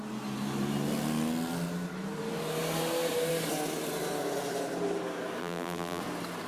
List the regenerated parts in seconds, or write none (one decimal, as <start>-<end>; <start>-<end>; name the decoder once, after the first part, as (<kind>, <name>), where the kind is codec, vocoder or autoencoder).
5.4-6.0 (vocoder, BigVGAN v2)